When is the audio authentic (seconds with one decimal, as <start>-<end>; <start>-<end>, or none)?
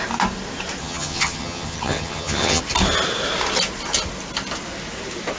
0.0-0.8; 2.6-5.4